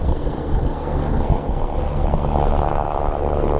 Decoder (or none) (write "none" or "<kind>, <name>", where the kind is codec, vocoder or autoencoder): codec, SNAC